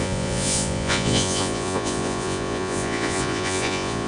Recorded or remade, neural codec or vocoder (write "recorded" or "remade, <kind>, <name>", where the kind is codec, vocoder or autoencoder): remade, vocoder, Vocos